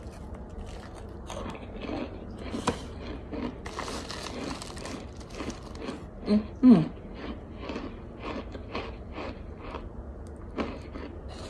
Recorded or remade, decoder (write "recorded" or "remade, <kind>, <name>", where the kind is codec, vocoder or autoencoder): recorded